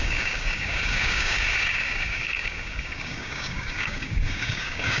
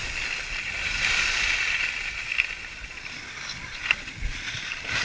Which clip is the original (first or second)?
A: second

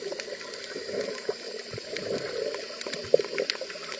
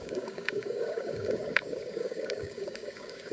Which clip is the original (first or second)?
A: first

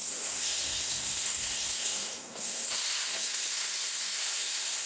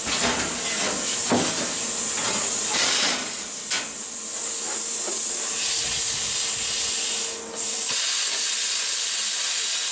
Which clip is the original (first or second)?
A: second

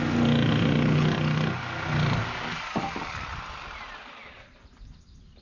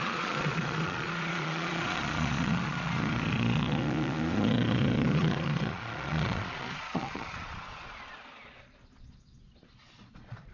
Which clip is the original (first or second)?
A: first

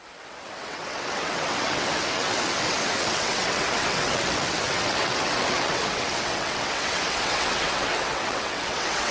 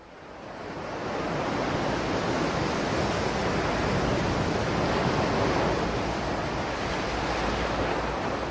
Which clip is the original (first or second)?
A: second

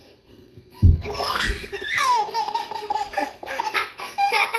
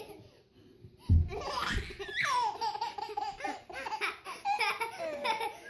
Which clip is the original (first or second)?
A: second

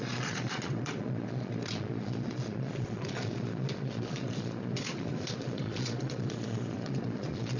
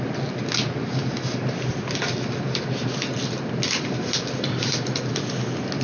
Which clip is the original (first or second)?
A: second